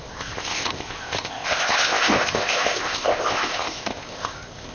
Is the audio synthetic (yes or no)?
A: yes